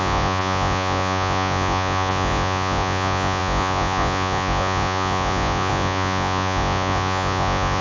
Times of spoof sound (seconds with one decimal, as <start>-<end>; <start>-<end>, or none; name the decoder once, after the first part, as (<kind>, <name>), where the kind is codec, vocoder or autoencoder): 0.0-7.8 (vocoder, Vocos)